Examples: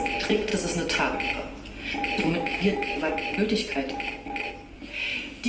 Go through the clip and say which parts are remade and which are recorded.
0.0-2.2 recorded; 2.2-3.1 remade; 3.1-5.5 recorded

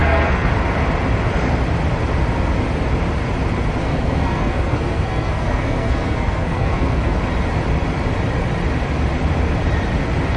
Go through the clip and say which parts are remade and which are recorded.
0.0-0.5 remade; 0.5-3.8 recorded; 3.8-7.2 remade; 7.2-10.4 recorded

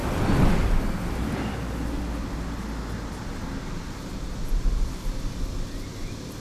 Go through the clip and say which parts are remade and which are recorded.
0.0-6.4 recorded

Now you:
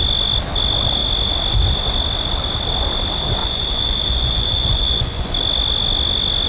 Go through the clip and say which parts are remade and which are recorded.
0.0-3.4 recorded; 3.4-5.3 remade; 5.3-6.5 recorded

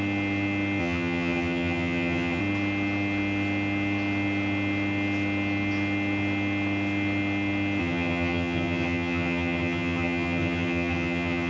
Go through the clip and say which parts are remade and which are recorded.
0.0-0.8 recorded; 0.8-2.4 remade; 2.4-7.8 recorded; 7.8-11.5 remade

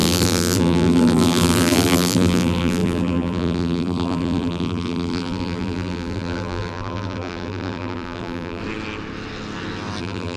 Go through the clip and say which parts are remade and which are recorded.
0.0-8.6 remade; 8.6-10.0 recorded; 10.0-10.4 remade

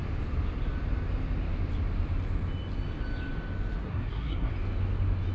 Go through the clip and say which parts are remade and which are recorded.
0.0-3.8 recorded; 3.8-4.5 remade; 4.5-5.3 recorded